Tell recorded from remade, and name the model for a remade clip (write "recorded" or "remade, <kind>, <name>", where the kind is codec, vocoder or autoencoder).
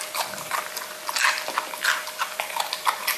recorded